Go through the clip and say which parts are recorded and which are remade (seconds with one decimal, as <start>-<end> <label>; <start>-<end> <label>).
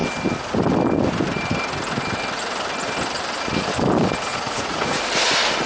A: 0.0-4.3 recorded; 4.3-5.0 remade; 5.0-5.7 recorded